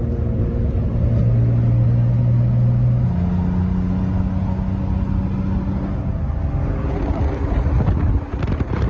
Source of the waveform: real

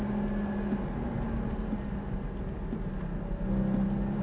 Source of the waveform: real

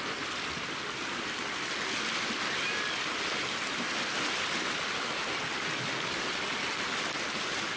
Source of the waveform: real